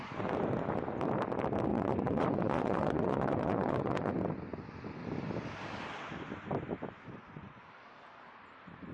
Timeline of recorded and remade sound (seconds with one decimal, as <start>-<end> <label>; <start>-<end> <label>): 0.0-1.7 recorded; 1.7-4.1 remade; 4.1-7.2 recorded; 7.2-7.7 remade; 7.7-8.9 recorded